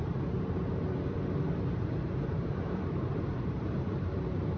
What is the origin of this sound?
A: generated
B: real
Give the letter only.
A